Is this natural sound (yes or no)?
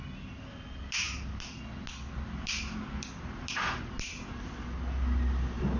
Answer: yes